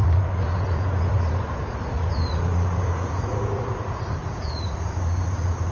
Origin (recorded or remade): remade